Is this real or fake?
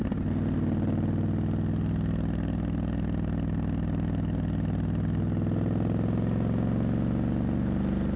real